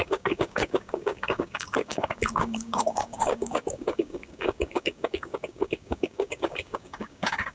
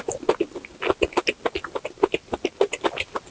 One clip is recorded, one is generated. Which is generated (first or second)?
first